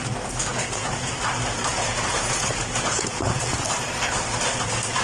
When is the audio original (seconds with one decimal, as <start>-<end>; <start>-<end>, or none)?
0.0-0.5; 1.1-1.7; 3.4-5.0